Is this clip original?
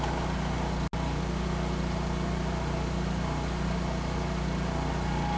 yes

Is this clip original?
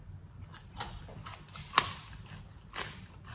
yes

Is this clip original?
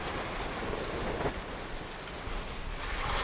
yes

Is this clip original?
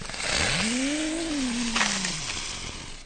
yes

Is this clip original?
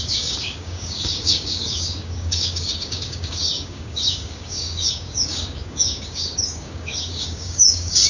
no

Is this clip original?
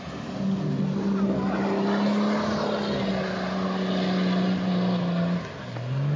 yes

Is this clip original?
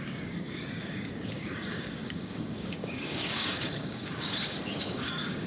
no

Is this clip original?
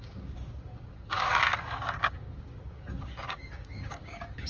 no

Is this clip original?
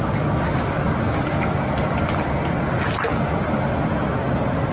yes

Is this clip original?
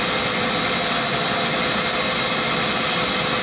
yes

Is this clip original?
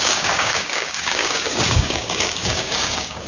no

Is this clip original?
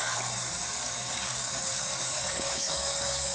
no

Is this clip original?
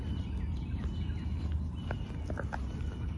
yes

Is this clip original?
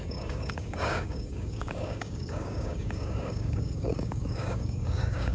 no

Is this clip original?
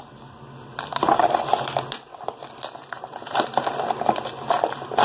yes